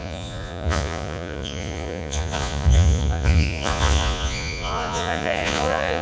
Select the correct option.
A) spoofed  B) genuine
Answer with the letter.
A